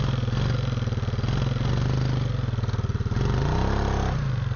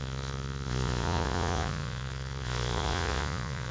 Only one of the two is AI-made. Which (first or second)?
second